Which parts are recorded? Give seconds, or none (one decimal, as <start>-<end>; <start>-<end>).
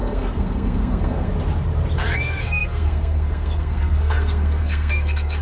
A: 1.3-2.2